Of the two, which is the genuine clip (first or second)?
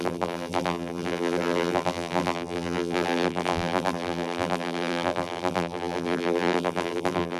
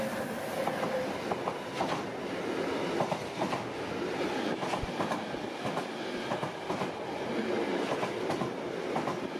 second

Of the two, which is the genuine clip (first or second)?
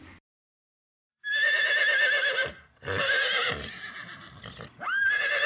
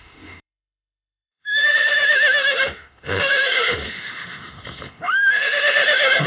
first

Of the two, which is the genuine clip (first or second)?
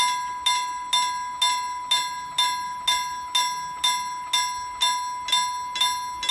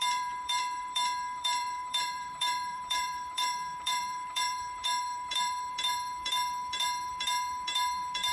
first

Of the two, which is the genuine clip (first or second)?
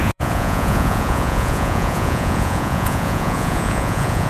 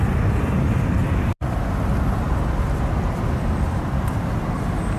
second